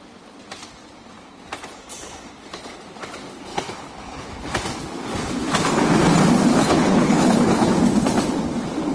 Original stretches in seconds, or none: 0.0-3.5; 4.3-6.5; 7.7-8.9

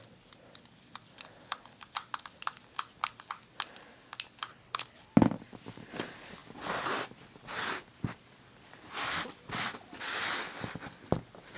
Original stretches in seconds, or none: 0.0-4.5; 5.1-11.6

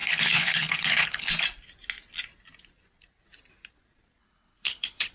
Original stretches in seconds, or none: 1.3-4.2